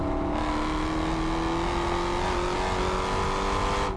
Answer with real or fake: real